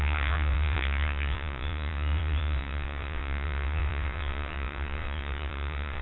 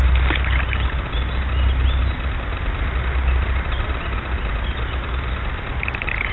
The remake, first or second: first